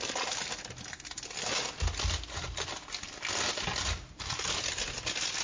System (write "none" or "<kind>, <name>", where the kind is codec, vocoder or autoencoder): none